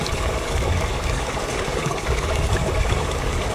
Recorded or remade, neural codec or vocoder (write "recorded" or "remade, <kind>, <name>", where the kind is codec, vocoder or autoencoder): remade, codec, DAC